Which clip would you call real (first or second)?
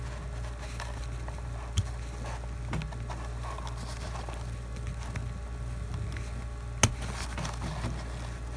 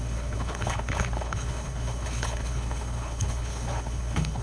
first